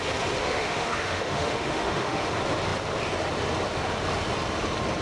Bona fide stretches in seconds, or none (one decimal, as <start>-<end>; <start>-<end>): 0.0-0.4; 2.3-5.0